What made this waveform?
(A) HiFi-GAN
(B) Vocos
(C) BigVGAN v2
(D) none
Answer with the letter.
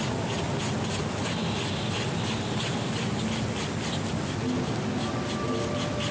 D